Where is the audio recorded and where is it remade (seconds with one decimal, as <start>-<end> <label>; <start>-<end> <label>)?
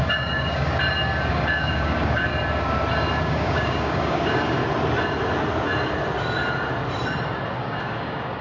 0.0-0.7 remade; 0.7-1.3 recorded; 1.3-2.3 remade; 2.3-3.2 recorded; 3.2-4.6 remade; 4.6-7.6 recorded; 7.6-8.4 remade